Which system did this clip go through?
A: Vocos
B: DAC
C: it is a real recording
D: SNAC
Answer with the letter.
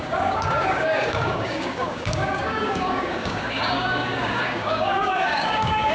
B